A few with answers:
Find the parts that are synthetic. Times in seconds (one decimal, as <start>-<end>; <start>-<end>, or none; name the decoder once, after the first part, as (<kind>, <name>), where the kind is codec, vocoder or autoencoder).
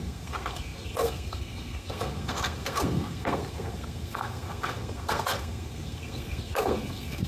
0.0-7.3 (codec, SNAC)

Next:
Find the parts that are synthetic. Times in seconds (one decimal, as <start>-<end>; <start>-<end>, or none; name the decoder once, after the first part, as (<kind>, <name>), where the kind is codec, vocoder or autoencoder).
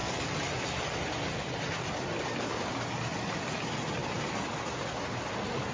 none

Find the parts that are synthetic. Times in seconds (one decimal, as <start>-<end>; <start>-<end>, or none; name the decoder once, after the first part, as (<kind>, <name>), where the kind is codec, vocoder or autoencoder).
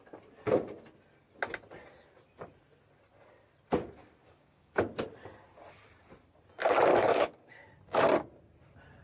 4.2-4.8 (codec, DAC); 6.9-7.7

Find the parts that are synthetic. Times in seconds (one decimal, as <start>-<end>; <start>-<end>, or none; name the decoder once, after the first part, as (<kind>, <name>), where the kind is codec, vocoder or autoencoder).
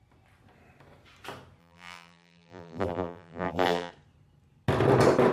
1.6-3.9 (vocoder, BigVGAN v2)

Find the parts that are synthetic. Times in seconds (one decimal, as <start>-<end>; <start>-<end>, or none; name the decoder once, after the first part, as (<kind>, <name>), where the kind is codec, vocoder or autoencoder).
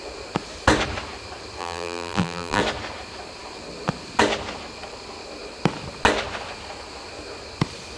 1.6-2.6 (vocoder, BigVGAN v2)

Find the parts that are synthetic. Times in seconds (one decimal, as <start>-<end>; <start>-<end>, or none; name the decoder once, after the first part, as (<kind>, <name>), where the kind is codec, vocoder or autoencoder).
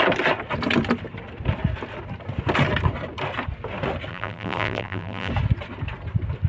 4.1-5.3 (vocoder, BigVGAN v2)